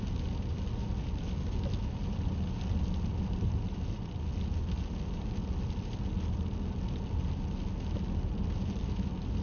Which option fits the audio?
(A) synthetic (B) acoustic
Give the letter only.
B